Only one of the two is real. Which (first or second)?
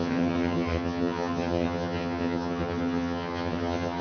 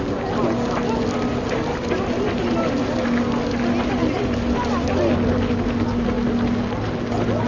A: second